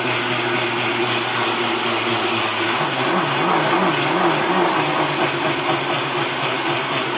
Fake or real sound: real